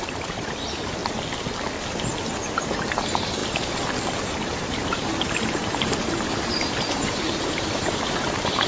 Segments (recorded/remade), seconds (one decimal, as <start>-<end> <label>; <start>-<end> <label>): 0.0-1.0 remade; 1.0-2.2 recorded; 2.2-3.4 remade; 3.4-4.2 recorded; 4.2-8.7 remade